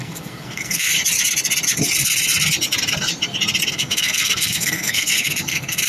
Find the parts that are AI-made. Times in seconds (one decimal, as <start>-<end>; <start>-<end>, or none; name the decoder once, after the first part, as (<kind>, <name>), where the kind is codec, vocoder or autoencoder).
0.0-0.9 (codec, SNAC); 3.7-5.9